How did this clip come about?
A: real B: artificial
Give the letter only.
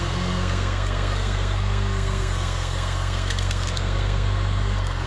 B